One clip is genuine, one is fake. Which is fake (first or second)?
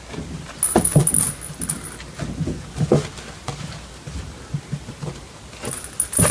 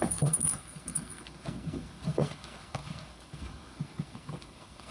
second